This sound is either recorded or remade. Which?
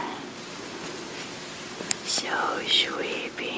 recorded